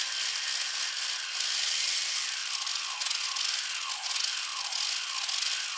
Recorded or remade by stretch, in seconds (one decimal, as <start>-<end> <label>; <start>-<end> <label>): 0.0-5.8 recorded